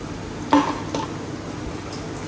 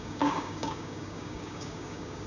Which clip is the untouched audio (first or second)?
first